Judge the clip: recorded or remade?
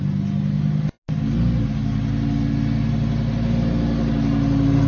recorded